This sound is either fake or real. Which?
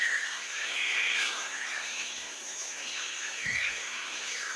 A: fake